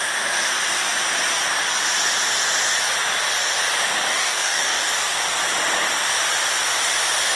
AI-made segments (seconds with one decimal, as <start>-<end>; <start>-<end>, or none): 4.1-4.9